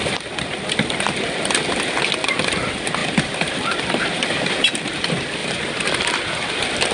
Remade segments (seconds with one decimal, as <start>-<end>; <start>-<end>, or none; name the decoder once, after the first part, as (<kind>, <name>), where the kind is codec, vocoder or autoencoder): 3.0-4.7 (vocoder, BigVGAN v2); 5.4-6.1

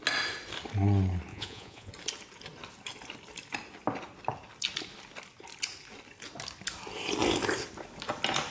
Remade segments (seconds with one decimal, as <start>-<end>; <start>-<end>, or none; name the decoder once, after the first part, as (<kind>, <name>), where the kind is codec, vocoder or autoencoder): 1.3-1.9 (vocoder, Vocos)

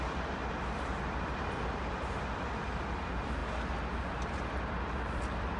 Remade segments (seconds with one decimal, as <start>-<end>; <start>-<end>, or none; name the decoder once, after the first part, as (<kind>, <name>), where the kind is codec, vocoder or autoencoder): 0.0-0.4 (vocoder, BigVGAN v2); 1.0-3.4; 4.7-5.6

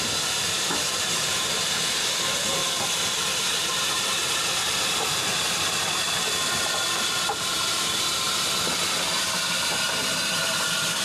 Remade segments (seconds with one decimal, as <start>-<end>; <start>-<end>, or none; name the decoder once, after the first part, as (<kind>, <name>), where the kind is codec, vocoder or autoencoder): 3.7-4.4 (vocoder, BigVGAN v2)

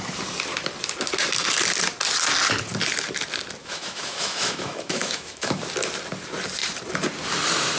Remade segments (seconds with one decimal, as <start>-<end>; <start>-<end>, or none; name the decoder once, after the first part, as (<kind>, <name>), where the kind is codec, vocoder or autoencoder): 3.6-5.6 (autoencoder, DAC-VAE)

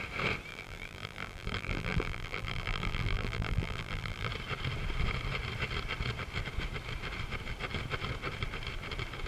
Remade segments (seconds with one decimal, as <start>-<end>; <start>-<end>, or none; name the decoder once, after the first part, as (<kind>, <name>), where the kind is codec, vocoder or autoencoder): 0.5-4.3 (vocoder, BigVGAN v2)

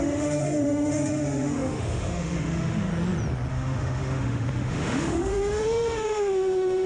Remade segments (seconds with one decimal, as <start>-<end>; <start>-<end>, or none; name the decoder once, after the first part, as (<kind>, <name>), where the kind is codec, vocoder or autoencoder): 0.0-2.9 (autoencoder, DAC-VAE); 3.5-6.9